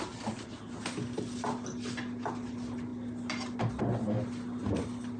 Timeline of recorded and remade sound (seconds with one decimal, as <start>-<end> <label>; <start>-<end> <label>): 0.0-5.2 recorded